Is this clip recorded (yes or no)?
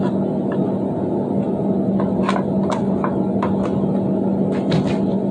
yes